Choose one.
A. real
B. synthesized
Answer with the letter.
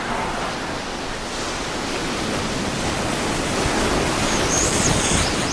A